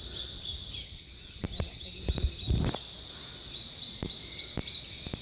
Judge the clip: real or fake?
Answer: real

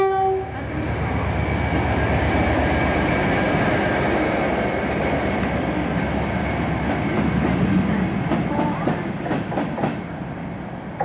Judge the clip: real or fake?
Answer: real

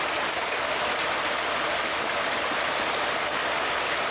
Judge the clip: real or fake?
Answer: real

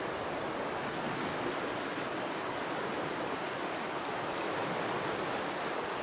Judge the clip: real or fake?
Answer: real